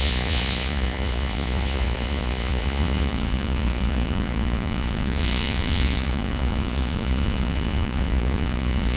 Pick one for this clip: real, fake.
fake